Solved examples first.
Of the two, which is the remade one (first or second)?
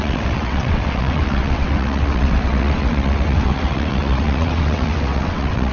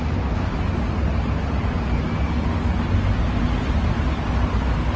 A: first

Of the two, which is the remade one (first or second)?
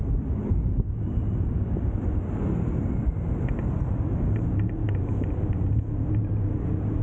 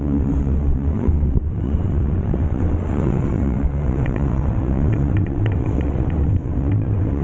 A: second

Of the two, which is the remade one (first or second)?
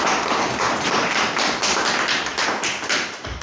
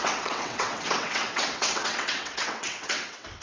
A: second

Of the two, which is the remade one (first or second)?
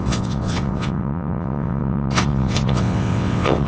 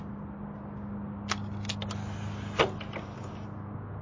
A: first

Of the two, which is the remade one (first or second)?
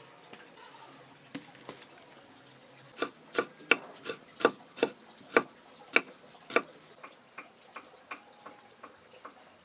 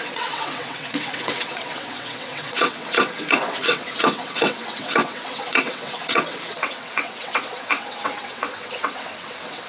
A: second